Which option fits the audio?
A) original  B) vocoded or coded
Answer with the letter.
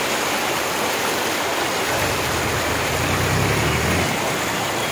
A